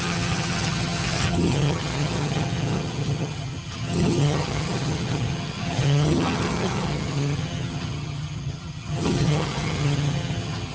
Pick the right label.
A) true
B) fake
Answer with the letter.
B